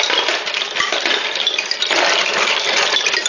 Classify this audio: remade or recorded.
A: recorded